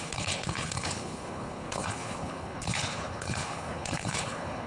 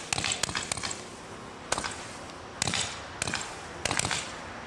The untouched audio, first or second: second